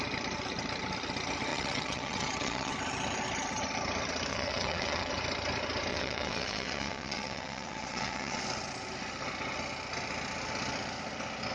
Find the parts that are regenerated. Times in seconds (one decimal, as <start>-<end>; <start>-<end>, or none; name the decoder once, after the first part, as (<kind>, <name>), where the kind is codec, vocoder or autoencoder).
1.5-2.7 (vocoder, WaveNeXt); 4.3-5.1; 5.9-8.4